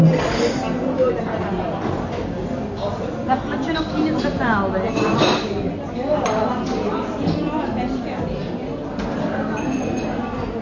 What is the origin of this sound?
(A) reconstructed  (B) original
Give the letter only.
B